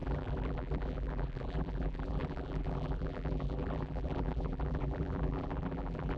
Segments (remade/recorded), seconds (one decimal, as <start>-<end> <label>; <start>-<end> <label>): 0.0-6.2 remade